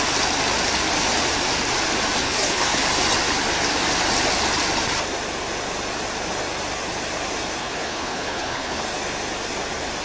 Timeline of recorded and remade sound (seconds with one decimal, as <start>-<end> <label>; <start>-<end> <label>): 0.0-2.2 recorded; 2.2-2.8 remade; 2.8-7.6 recorded; 7.6-8.8 remade; 8.8-10.0 recorded